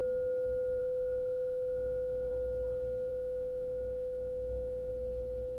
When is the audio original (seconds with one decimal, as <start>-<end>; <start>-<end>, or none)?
0.0-0.8; 2.3-3.1; 4.9-5.6